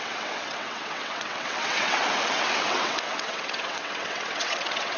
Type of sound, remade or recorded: remade